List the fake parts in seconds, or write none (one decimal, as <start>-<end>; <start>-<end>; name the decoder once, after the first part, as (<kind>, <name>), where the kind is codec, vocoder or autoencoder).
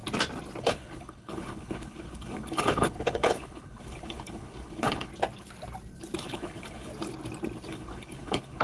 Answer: 0.6-5.1 (codec, HILCodec); 6.2-6.9; 7.7-8.6